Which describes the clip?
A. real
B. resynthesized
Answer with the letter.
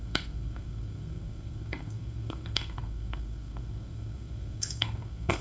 B